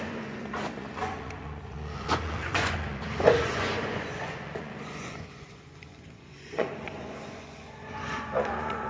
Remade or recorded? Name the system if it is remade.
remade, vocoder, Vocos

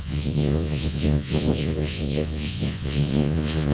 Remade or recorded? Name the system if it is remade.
remade, vocoder, Vocos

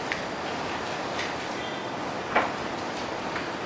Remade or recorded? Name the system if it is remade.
recorded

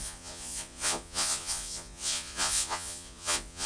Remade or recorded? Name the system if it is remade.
remade, vocoder, Vocos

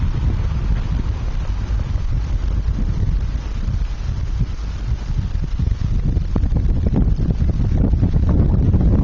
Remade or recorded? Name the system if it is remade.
recorded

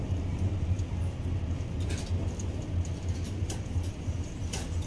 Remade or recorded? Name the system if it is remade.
recorded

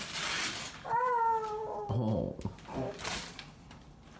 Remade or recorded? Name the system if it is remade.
recorded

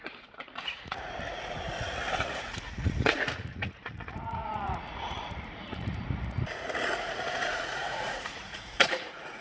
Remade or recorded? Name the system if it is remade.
remade, vocoder, Vocos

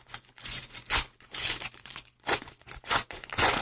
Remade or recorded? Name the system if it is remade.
remade, vocoder, Vocos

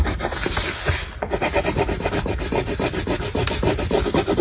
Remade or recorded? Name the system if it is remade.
recorded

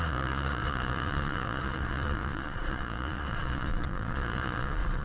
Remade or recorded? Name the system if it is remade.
remade, vocoder, Vocos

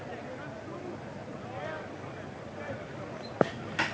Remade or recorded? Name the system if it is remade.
recorded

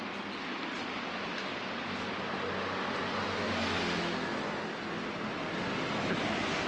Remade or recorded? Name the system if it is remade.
recorded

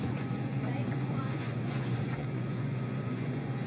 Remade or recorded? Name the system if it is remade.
remade, vocoder, Vocos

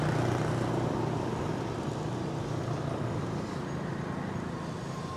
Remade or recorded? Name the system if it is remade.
recorded